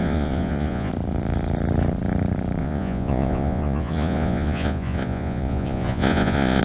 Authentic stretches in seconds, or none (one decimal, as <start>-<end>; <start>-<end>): 0.9-2.6